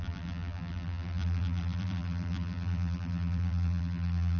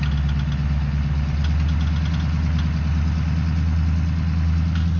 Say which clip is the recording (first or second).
second